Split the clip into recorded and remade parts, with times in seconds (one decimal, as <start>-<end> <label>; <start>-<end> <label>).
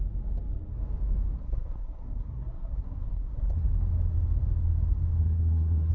0.0-1.4 recorded; 1.4-3.7 remade; 3.7-5.2 recorded; 5.2-5.9 remade